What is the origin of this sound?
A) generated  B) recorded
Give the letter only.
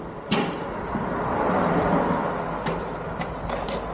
B